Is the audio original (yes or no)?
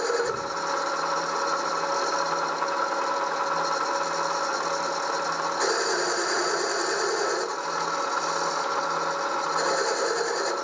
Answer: yes